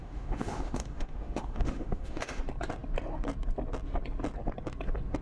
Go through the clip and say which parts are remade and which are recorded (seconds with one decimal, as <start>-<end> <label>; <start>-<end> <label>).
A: 0.0-2.4 remade; 2.4-5.2 recorded